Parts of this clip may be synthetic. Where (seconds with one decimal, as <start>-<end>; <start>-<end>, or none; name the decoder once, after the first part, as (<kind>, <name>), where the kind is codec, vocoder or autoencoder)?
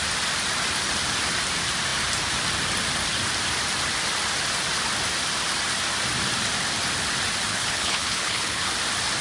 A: 7.5-8.7 (codec, HILCodec)